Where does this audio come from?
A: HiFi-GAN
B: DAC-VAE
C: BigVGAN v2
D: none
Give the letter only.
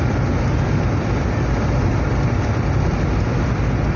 D